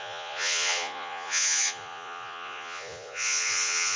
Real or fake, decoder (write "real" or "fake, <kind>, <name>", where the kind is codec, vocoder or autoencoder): fake, vocoder, Vocos